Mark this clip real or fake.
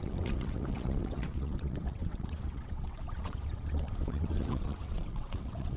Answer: fake